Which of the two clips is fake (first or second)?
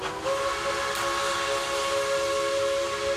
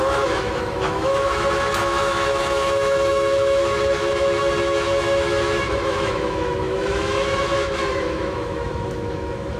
second